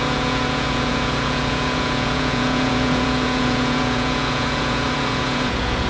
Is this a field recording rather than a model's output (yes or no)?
no